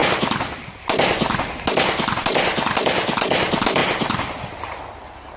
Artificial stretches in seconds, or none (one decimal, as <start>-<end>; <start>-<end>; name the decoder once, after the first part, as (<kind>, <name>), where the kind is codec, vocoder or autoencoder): none